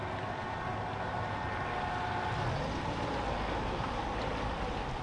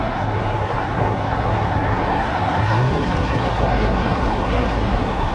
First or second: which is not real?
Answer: second